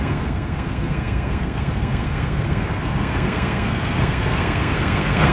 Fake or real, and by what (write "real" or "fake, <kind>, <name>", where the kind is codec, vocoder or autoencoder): fake, codec, SNAC